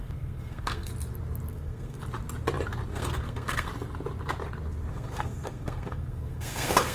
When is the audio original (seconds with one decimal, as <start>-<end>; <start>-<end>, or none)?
0.9-1.5; 2.0-2.9; 3.7-4.9